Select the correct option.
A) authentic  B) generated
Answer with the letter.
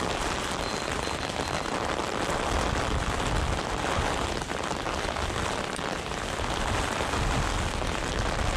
A